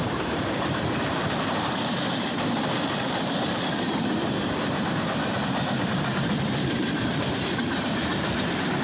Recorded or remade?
remade